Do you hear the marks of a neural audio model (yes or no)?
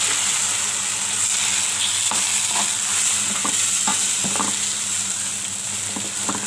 no